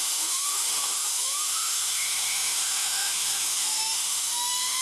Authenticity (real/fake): fake